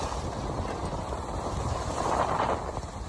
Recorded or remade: recorded